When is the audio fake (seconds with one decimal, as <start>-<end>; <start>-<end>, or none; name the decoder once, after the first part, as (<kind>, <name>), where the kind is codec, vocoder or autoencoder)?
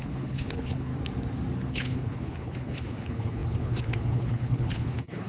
0.0-0.9 (codec, HILCodec); 1.7-5.3